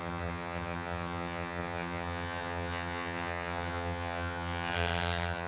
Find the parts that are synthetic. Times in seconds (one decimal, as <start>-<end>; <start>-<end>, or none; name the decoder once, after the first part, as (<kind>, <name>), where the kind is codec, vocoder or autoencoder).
0.0-5.5 (vocoder, HiFi-GAN)